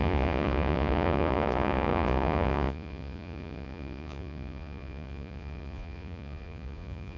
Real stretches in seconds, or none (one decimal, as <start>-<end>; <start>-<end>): none